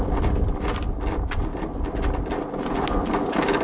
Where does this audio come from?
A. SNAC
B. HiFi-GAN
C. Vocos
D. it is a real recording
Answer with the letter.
D